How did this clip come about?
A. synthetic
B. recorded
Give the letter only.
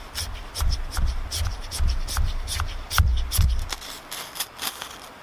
B